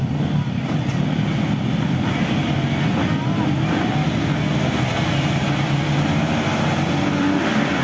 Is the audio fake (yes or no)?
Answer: no